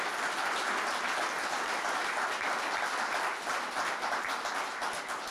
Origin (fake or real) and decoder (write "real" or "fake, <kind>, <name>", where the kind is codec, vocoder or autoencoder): real